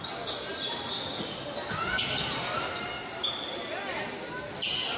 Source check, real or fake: real